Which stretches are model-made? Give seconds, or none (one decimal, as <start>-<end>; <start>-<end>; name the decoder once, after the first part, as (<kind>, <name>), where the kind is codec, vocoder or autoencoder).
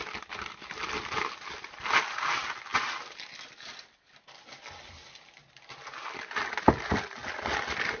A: none